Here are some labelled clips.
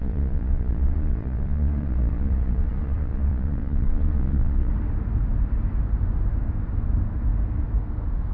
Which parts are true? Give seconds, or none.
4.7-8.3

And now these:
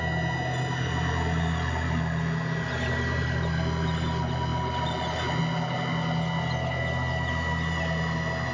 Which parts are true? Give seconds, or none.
0.0-8.5

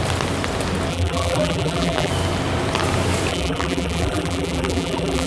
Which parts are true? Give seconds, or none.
0.0-0.9; 2.1-3.3

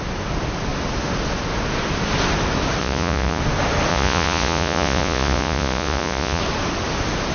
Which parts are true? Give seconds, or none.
0.0-2.8; 3.4-3.9; 6.4-7.3

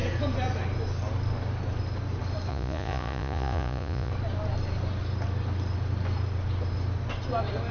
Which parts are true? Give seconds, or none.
0.0-2.5; 4.1-7.7

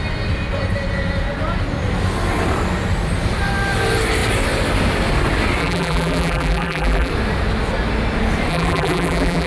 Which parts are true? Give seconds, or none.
0.0-5.6; 7.1-8.5

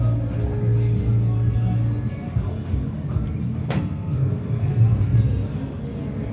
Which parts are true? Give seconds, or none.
0.0-3.6; 4.7-6.3

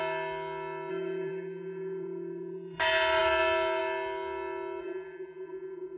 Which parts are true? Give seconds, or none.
0.0-0.9; 2.8-4.8